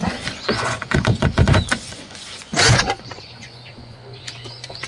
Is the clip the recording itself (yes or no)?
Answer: no